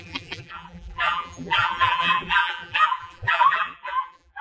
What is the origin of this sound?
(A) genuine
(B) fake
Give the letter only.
B